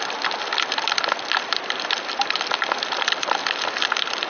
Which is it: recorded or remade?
recorded